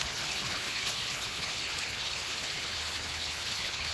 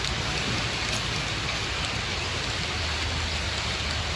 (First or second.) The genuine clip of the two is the second